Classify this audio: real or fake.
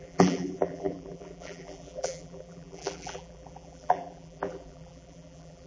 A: fake